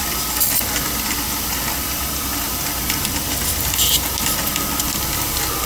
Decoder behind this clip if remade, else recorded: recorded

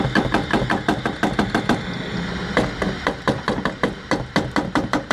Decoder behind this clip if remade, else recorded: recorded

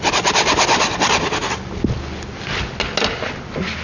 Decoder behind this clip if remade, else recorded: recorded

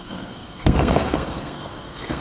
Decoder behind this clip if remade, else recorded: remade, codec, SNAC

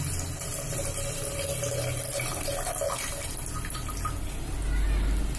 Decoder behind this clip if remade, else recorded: recorded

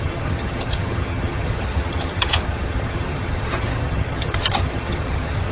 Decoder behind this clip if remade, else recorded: remade, vocoder, HiFi-GAN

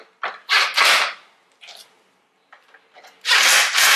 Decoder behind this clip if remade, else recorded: recorded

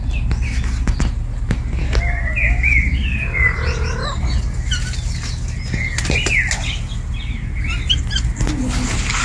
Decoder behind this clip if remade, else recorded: recorded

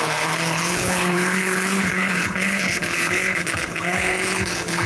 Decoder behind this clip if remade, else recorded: remade, codec, HILCodec